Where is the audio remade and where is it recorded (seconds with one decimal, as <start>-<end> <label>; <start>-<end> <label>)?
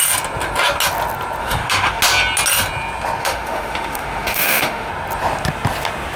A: 0.0-1.4 recorded; 1.4-2.0 remade; 2.0-3.2 recorded; 3.2-4.9 remade; 4.9-6.2 recorded